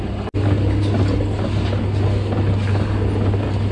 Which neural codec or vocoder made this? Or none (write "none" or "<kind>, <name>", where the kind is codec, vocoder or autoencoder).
none